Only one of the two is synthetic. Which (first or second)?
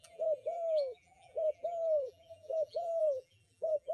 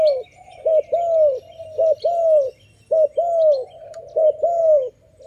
first